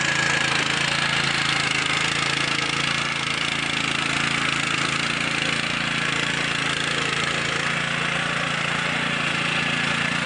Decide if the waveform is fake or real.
real